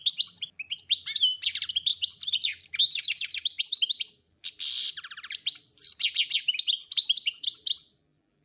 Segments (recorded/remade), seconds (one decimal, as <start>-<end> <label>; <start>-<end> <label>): 0.0-8.4 recorded